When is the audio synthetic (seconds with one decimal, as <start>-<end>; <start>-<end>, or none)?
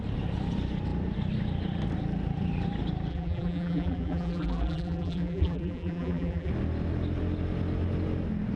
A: 3.1-6.5